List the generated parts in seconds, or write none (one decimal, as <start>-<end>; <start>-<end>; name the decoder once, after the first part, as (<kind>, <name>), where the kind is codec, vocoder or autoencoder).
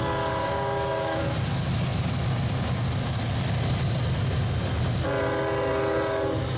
0.4-1.2 (codec, DAC)